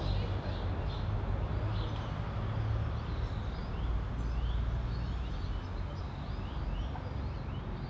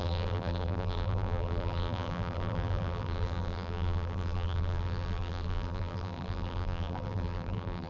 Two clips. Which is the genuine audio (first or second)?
first